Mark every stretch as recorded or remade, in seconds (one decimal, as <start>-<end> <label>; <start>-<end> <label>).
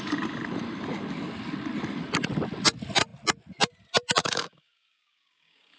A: 0.0-4.2 recorded; 4.2-5.8 remade